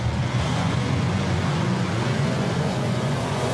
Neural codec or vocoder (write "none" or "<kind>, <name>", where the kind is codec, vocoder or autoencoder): vocoder, Vocos